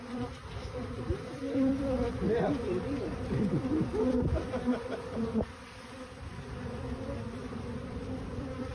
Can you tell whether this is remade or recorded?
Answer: remade